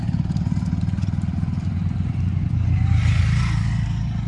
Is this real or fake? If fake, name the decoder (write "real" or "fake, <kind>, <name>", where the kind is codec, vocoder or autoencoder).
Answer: real